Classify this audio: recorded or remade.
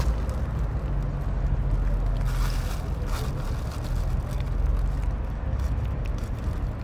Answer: recorded